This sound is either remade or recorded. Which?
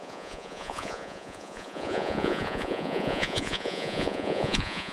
remade